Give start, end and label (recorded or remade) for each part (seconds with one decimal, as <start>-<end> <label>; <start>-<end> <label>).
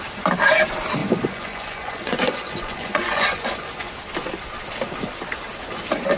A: 0.0-1.0 recorded; 1.0-3.9 remade; 3.9-6.2 recorded